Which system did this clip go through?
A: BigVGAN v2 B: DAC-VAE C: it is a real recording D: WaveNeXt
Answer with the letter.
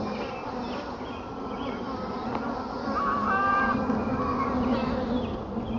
C